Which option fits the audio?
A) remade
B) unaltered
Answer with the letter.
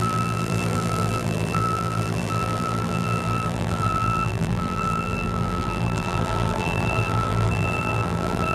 A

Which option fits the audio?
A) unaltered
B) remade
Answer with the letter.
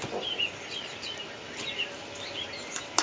A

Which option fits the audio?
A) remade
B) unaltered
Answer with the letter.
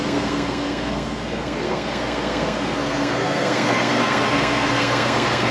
A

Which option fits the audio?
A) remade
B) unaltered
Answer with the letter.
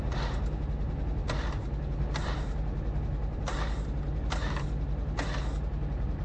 B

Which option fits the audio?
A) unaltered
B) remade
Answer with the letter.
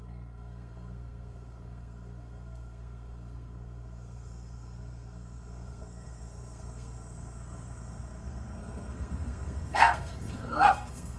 B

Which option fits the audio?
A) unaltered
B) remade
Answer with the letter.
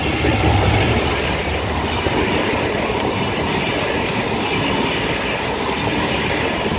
A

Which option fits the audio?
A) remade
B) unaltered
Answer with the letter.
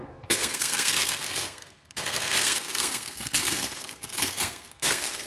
A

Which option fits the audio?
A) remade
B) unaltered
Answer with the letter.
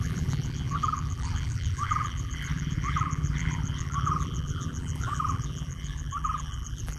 A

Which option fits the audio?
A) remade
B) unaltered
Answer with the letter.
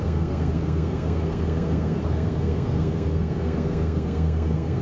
A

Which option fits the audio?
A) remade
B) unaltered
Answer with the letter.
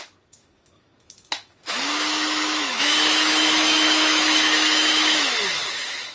A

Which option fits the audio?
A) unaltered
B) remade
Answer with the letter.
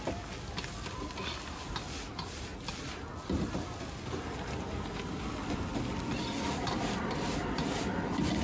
A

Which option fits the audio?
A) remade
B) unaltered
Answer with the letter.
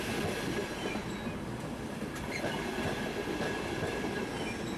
B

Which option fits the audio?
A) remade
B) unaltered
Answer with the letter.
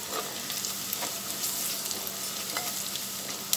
B